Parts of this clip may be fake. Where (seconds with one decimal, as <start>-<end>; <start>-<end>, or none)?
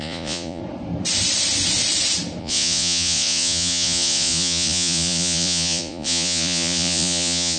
0.0-0.6; 2.4-7.6